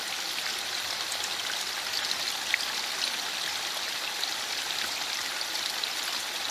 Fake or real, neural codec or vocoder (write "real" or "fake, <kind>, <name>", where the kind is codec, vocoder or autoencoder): real